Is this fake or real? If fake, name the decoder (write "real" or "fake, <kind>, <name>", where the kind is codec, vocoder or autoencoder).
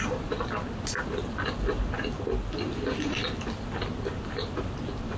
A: real